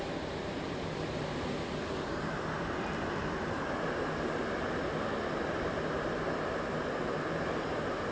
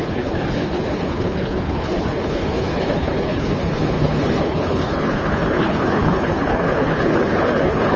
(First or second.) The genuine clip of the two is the first